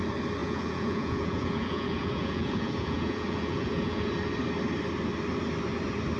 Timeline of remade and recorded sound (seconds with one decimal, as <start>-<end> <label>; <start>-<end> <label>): 0.0-0.4 recorded; 0.4-4.1 remade; 4.1-6.2 recorded